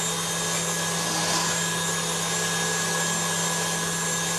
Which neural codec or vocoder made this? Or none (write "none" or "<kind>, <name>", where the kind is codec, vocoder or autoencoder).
none